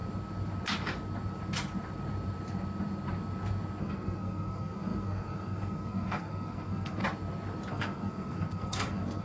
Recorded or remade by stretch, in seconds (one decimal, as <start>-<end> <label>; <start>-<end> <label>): 0.0-3.8 recorded; 3.8-7.0 remade; 7.0-7.7 recorded; 7.7-9.2 remade